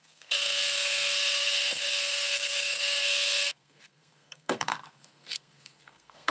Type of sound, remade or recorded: remade